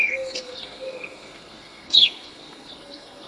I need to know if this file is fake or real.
fake